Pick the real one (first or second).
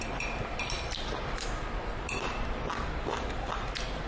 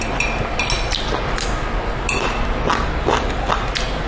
second